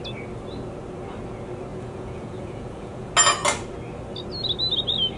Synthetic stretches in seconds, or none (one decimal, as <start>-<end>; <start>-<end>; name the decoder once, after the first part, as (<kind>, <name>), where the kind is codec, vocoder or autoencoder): 1.7-3.1 (vocoder, Vocos)